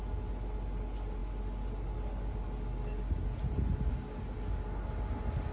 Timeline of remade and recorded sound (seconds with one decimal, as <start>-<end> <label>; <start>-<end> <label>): 0.0-5.5 recorded